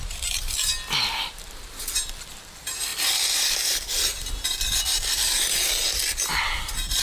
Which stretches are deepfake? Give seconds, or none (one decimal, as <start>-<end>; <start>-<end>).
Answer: none